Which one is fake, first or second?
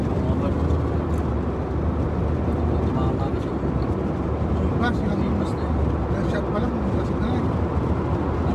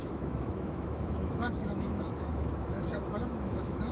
second